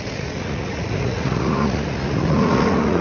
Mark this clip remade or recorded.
remade